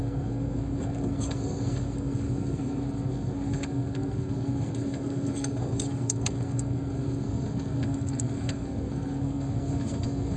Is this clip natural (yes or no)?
no